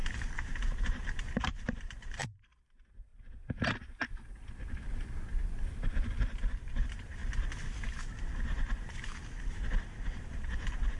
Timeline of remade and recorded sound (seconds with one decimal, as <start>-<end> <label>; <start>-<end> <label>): 0.0-3.1 remade; 3.1-5.8 recorded; 5.8-7.2 remade; 7.2-8.0 recorded; 8.0-11.0 remade